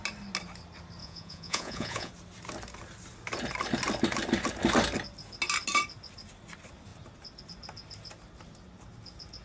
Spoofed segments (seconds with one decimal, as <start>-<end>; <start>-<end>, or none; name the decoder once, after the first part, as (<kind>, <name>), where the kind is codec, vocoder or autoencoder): 1.0-2.1 (vocoder, Vocos)